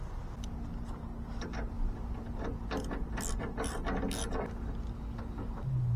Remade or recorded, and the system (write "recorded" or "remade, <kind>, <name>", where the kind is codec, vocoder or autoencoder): recorded